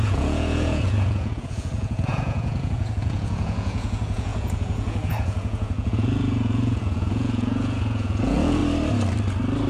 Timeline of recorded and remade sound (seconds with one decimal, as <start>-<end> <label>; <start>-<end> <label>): 0.0-8.6 remade; 8.6-9.7 recorded